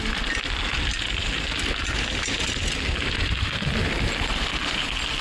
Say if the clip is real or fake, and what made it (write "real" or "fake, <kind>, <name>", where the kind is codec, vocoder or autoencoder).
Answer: real